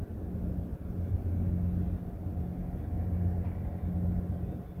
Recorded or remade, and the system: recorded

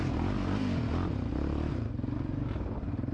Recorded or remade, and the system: recorded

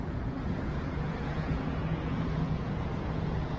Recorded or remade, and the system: remade, vocoder, Vocos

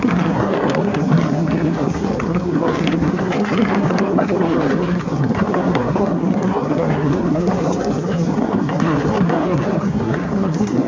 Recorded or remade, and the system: remade, codec, SNAC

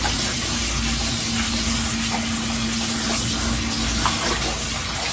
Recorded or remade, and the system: recorded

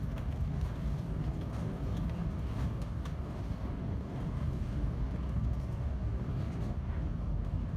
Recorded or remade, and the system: remade, codec, DAC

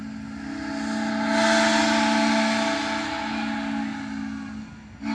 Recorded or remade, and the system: recorded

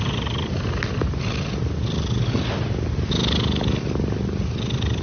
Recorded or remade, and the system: recorded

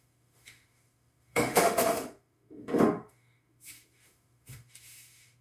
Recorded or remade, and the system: remade, autoencoder, DAC-VAE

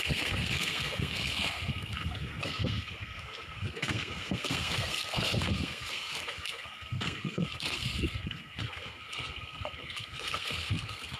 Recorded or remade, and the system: remade, codec, SNAC